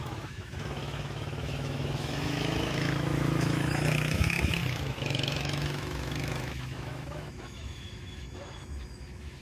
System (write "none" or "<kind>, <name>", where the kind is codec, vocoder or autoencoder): autoencoder, DAC-VAE